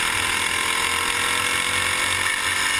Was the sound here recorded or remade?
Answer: recorded